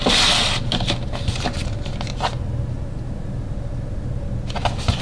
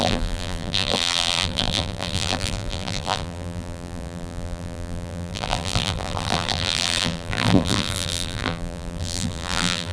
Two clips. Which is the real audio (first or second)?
first